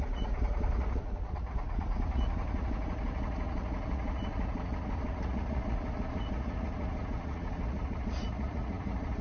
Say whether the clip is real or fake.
fake